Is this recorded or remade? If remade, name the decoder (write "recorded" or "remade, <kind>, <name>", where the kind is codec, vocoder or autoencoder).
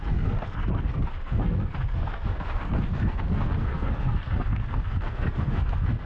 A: remade, codec, SNAC